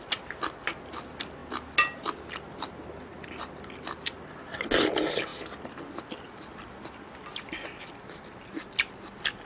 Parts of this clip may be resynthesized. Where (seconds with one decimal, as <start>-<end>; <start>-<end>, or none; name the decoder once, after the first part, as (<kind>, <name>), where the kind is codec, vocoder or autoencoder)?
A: none